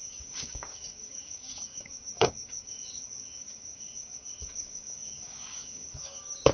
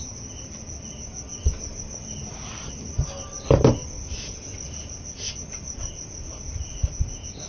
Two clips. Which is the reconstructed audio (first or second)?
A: first